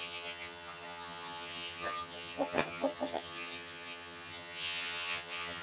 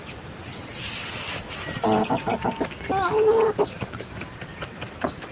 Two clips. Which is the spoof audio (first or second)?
first